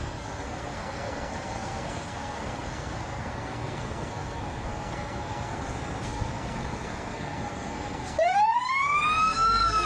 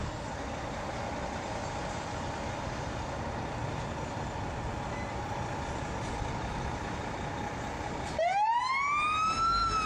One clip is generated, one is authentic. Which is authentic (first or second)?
second